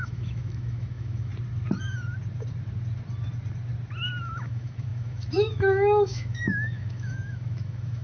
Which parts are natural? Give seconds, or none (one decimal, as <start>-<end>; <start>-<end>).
1.3-4.2